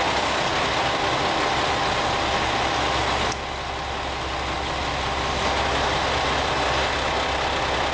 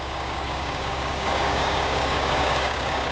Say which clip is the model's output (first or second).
second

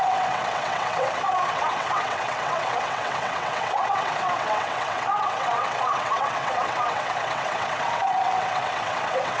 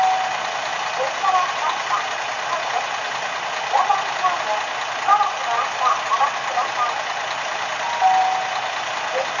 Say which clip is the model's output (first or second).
first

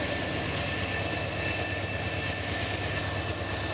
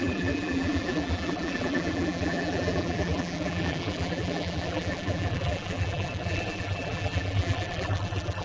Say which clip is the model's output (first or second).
second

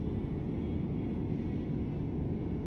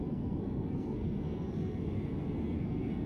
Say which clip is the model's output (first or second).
second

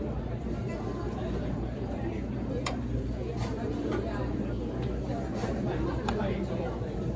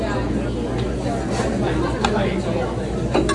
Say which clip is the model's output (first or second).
first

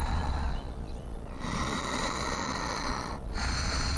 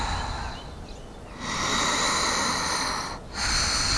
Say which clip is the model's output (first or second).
first